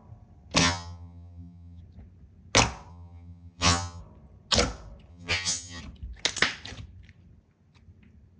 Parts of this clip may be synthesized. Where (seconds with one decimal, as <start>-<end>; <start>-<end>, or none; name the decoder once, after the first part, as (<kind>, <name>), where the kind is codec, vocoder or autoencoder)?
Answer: 0.6-1.8 (vocoder, HiFi-GAN); 2.9-4.0; 5.1-5.8